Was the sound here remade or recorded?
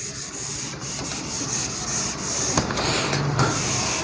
recorded